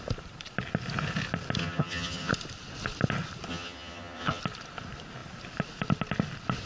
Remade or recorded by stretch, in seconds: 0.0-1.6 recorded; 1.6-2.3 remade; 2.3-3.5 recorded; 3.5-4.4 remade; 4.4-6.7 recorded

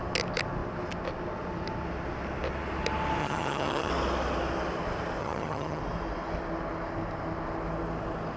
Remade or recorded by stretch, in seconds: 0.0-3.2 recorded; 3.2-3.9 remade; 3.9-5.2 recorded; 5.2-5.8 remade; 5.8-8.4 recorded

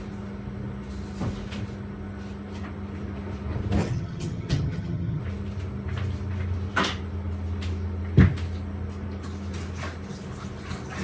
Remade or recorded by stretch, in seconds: 0.0-3.8 recorded; 3.8-5.2 remade; 5.2-11.0 recorded